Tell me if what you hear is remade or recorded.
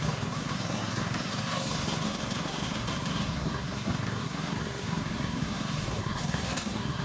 remade